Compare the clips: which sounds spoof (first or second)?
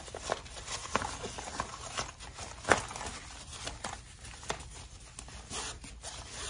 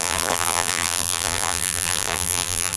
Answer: second